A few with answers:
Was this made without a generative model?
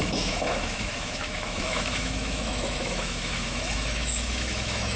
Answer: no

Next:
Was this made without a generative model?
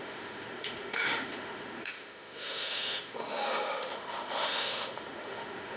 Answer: no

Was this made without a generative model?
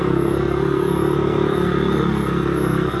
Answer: no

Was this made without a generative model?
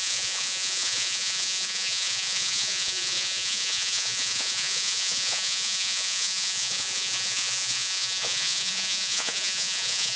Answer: no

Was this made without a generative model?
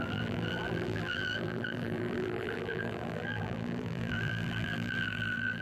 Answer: no